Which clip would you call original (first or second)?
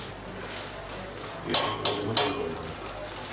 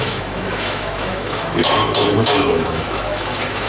first